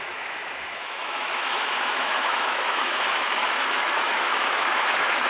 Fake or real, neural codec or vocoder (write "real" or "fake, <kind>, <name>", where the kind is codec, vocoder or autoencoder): fake, autoencoder, DAC-VAE